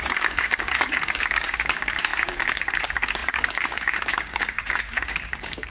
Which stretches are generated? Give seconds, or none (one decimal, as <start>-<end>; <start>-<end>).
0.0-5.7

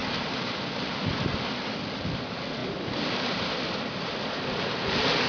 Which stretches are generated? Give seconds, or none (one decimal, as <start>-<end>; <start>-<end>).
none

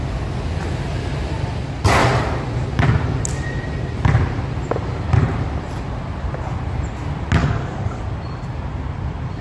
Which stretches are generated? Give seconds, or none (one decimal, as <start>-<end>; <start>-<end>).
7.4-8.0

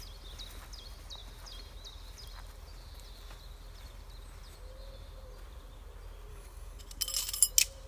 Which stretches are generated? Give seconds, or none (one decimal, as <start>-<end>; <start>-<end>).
6.3-6.8